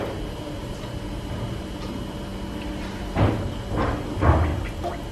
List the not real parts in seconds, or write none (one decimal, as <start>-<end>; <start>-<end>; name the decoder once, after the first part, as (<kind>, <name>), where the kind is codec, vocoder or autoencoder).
none

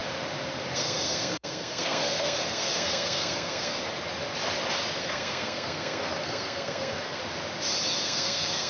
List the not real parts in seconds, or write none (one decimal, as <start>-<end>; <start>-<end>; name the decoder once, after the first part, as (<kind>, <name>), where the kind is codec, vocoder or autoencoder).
0.7-3.8 (codec, SNAC); 5.0-7.2; 8.0-8.7

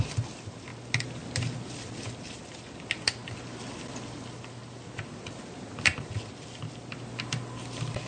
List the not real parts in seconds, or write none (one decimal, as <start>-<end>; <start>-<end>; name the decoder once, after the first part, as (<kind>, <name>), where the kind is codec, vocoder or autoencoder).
none

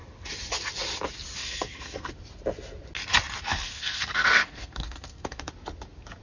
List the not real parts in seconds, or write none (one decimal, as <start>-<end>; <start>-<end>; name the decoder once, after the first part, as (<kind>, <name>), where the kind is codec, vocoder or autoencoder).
1.4-2.1 (codec, SNAC); 3.5-5.5

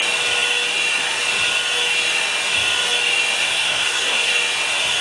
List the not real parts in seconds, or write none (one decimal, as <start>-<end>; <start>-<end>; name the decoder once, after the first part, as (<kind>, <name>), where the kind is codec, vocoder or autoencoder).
3.4-4.3 (codec, SNAC)

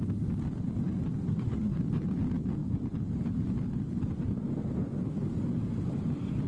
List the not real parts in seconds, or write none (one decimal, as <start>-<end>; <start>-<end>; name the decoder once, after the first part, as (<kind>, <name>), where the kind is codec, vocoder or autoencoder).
1.3-1.8 (codec, SNAC)

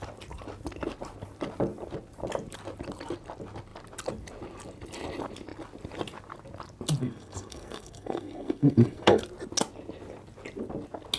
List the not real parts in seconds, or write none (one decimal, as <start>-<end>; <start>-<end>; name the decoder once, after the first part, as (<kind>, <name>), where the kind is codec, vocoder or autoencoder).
7.0-9.2 (codec, SNAC)

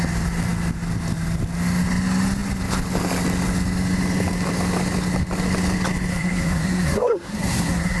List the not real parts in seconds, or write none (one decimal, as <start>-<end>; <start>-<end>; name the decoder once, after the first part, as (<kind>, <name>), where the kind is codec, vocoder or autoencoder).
6.1-8.0 (codec, SNAC)